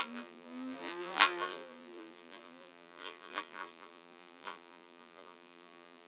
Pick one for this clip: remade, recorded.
remade